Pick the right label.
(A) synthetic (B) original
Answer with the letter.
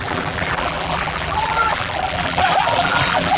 A